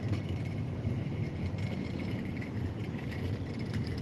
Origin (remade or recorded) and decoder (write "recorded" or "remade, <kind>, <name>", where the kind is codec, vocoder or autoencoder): remade, vocoder, BigVGAN v2